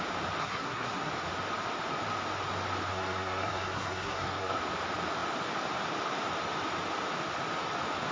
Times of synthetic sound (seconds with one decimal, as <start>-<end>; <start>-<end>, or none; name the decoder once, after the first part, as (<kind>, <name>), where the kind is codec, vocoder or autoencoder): 0.4-1.1 (codec, SNAC); 2.9-4.6